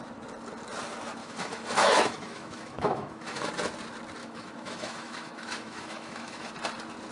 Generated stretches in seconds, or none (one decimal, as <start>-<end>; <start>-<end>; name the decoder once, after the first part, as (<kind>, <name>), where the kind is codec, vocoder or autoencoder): 1.2-3.5 (autoencoder, DAC-VAE); 4.2-6.5

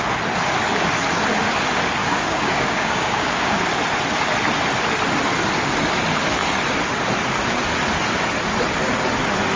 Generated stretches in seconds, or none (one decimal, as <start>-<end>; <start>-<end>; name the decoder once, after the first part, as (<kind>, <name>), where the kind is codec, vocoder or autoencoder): 2.0-3.6 (codec, DAC)

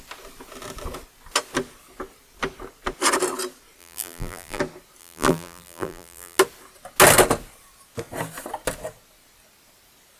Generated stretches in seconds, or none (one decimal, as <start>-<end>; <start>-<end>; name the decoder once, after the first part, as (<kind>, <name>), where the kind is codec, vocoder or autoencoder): 3.8-4.6 (vocoder, BigVGAN v2); 5.0-6.4

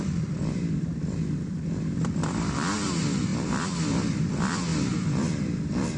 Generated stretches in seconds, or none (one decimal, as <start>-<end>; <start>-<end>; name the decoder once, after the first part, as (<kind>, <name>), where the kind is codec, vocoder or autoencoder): 0.0-6.0 (vocoder, BigVGAN v2)

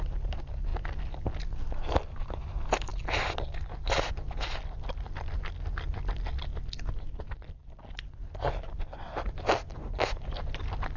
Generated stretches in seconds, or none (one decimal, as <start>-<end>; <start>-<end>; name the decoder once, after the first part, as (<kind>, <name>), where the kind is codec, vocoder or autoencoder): none

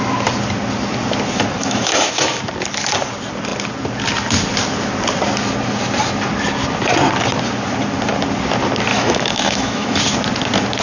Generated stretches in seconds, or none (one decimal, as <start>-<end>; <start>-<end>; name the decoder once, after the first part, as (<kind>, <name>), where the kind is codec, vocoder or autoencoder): 1.6-2.4 (autoencoder, DAC-VAE); 8.9-10.0